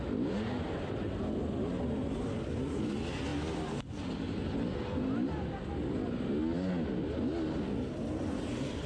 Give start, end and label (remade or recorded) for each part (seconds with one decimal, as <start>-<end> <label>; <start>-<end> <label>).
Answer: 0.0-8.9 recorded